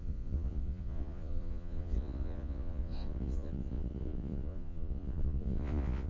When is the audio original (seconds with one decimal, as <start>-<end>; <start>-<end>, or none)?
none